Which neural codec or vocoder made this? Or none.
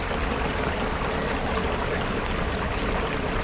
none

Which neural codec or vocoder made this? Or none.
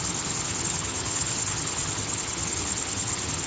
vocoder, HiFi-GAN